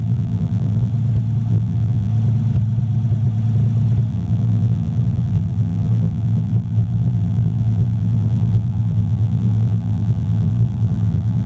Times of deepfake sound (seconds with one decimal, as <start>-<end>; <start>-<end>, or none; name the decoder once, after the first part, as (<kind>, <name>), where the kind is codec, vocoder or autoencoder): 0.0-0.9 (vocoder, BigVGAN v2); 1.5-2.1; 4.1-11.5